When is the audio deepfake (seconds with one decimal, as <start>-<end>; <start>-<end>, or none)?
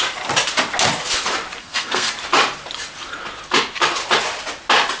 1.6-2.1